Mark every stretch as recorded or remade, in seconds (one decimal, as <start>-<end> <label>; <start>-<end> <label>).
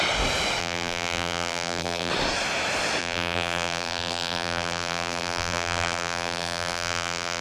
0.0-0.6 recorded; 0.6-2.1 remade; 2.1-3.0 recorded; 3.0-7.4 remade